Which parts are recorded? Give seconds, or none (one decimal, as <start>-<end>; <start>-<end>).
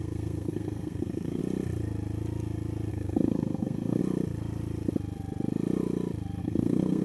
1.4-2.9; 4.0-6.4